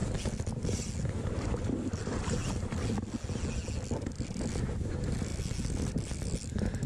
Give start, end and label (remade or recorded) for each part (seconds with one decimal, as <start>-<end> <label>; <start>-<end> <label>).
0.0-6.9 recorded

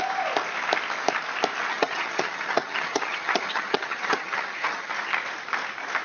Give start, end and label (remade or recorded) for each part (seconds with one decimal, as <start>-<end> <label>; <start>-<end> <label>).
0.0-1.7 recorded; 1.7-4.9 remade; 4.9-6.0 recorded

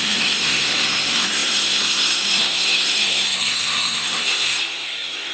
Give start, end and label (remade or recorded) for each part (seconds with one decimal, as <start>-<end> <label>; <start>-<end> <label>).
0.0-5.3 remade

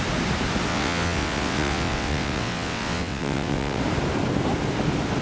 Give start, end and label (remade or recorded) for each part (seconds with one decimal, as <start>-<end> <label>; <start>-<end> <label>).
0.0-0.7 recorded; 0.7-3.8 remade; 3.8-5.2 recorded

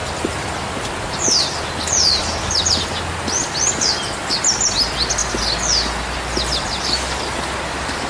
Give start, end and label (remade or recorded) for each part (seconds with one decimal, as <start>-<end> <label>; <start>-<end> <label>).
0.0-8.1 recorded

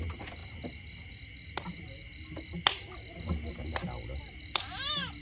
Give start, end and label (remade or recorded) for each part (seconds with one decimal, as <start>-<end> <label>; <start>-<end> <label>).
0.0-5.2 recorded